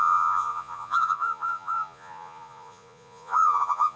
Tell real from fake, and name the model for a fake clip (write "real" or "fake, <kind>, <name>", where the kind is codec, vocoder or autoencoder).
fake, vocoder, Vocos